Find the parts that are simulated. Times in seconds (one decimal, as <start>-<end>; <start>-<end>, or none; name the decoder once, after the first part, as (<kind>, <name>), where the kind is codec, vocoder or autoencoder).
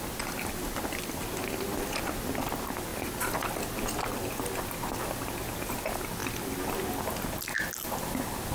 none